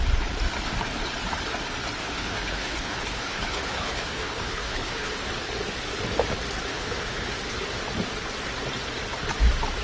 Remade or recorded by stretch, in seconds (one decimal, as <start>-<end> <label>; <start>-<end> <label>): 0.0-2.0 recorded; 2.0-5.3 remade; 5.3-6.7 recorded; 6.7-7.3 remade; 7.3-9.8 recorded